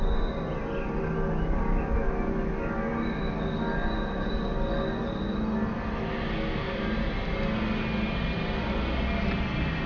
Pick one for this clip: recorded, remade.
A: recorded